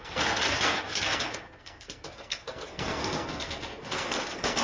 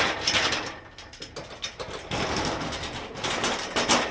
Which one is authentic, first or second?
second